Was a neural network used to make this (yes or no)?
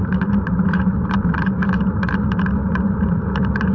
yes